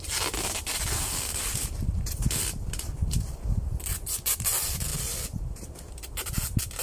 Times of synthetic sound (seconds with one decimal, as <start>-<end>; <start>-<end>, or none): none